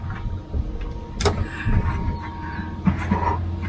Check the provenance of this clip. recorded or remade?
recorded